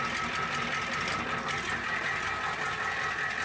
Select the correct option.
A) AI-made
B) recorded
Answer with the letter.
B